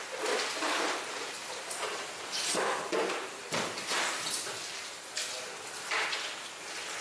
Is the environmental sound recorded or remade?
recorded